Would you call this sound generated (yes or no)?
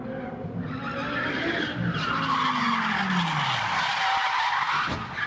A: no